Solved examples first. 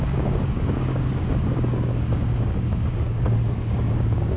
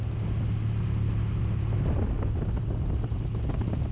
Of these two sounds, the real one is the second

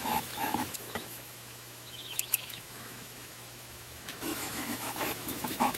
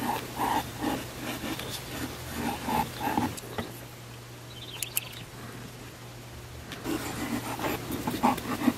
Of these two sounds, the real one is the second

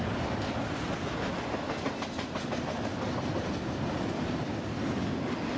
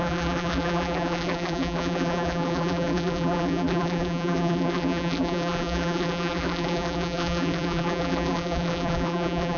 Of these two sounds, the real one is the first